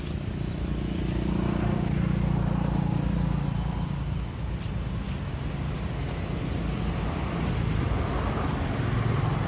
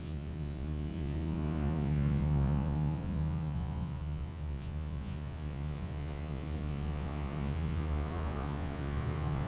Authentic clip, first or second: first